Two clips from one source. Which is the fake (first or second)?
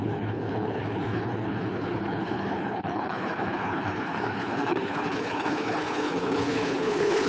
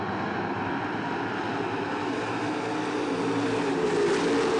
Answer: first